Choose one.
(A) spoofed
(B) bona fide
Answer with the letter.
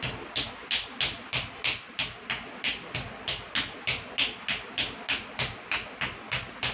B